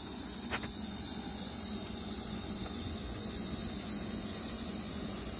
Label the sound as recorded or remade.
remade